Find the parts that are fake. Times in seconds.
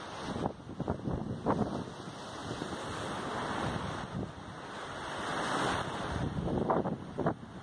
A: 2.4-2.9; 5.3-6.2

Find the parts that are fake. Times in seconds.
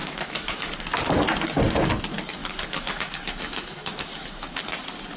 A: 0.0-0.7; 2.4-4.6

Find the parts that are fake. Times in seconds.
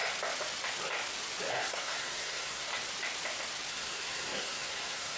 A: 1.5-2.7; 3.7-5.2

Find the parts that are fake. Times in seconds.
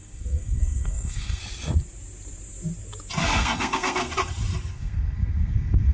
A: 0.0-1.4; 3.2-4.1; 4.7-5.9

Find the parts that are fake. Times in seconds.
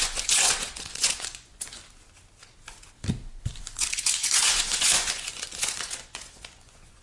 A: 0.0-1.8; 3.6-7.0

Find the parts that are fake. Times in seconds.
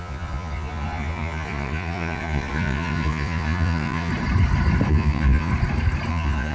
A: 0.0-4.1; 4.9-5.5; 6.1-6.5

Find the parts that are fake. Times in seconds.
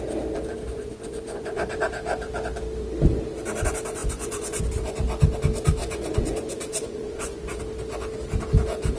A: 0.6-1.7; 4.0-4.6; 5.8-7.6